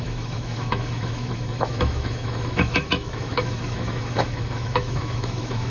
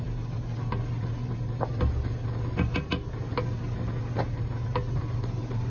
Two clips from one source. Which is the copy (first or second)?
first